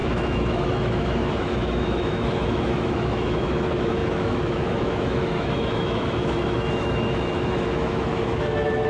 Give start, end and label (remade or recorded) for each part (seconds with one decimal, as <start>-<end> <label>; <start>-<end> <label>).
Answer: 0.0-8.9 remade